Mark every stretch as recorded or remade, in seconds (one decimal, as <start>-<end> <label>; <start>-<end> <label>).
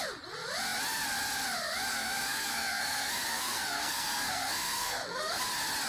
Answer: 0.0-1.9 recorded; 1.9-5.4 remade; 5.4-5.9 recorded